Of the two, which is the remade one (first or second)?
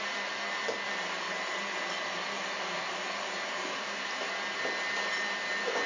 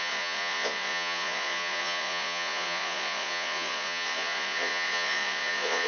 second